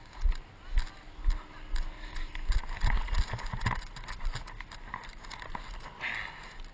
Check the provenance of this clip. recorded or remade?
recorded